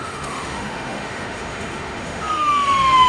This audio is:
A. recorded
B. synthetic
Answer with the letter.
B